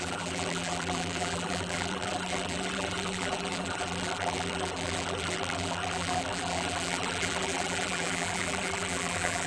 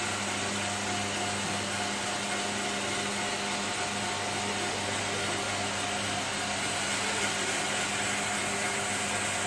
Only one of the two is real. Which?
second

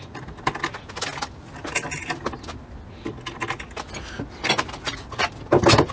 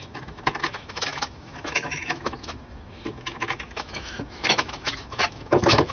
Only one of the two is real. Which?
first